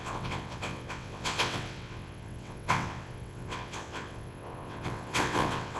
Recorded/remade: remade